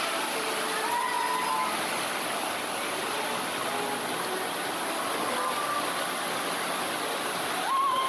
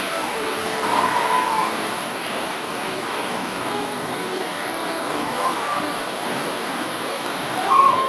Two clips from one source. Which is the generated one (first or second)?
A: second